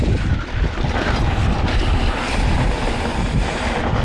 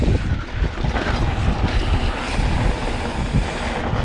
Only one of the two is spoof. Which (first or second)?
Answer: first